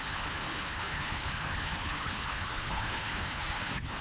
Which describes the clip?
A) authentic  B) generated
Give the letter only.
B